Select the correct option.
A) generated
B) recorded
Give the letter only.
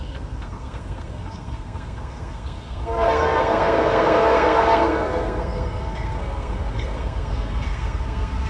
A